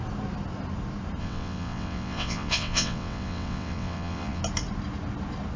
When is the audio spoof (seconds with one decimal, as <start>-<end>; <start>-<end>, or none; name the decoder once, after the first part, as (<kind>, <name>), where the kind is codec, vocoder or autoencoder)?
1.2-4.4 (vocoder, WaveNeXt)